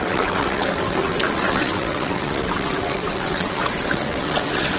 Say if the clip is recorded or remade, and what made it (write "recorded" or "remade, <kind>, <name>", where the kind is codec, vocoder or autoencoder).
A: remade, vocoder, WaveNeXt